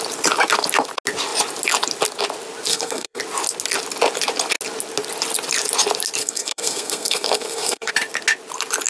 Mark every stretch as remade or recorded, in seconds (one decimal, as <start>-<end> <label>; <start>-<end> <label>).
0.0-2.7 recorded; 2.7-3.2 remade; 3.2-6.2 recorded; 6.2-7.9 remade; 7.9-8.9 recorded